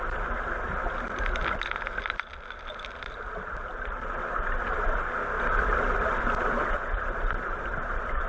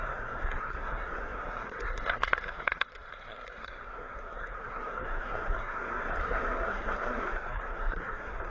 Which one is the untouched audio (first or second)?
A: first